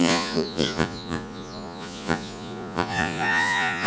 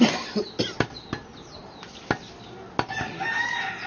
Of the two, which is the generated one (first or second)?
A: first